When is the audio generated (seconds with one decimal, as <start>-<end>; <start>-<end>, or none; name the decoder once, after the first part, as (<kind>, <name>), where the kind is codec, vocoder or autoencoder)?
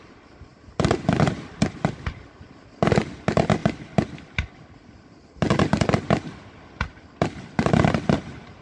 none